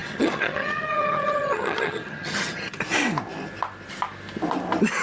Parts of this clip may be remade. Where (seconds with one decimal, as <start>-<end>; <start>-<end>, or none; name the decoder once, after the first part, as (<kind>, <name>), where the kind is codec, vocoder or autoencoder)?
0.0-2.8 (vocoder, HiFi-GAN)